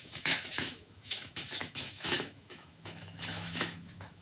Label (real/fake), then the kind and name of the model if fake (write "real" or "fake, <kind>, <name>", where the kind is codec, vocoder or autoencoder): fake, autoencoder, DAC-VAE